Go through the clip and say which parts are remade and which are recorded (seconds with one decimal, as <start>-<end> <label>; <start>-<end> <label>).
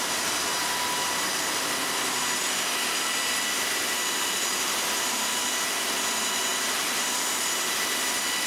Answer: 0.0-8.5 recorded